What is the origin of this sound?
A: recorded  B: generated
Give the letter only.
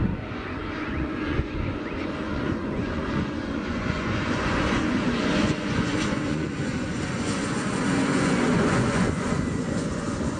B